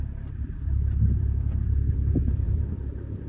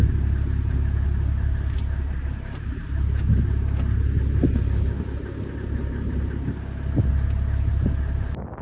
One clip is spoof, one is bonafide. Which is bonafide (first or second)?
second